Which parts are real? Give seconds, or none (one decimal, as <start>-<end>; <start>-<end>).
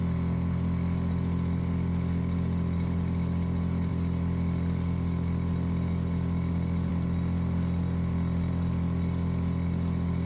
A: 0.0-10.3